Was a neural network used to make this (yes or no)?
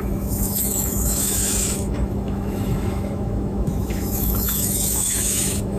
yes